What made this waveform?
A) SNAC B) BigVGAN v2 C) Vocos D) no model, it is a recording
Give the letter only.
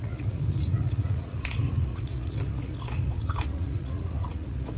C